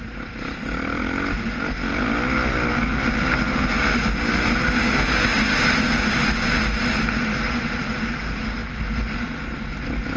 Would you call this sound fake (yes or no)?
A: no